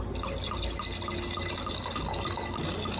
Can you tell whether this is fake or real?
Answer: real